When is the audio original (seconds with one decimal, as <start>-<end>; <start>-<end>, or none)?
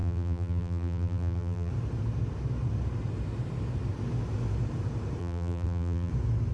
1.7-5.2; 6.1-6.5